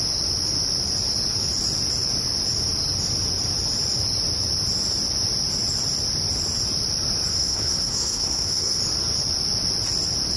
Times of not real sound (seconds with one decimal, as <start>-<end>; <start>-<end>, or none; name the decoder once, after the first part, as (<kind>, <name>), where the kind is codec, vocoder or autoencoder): 7.3-8.8 (codec, SNAC)